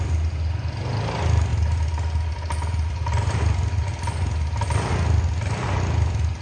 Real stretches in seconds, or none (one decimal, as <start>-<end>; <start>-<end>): 0.0-6.4